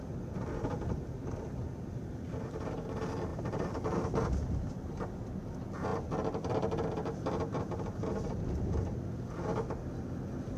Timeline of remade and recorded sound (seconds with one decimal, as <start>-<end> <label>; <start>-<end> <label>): 0.0-3.3 recorded; 3.3-4.7 remade; 4.7-10.6 recorded